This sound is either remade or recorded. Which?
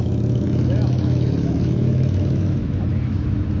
remade